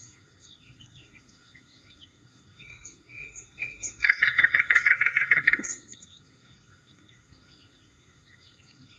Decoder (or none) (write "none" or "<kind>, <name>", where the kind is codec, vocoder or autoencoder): codec, SNAC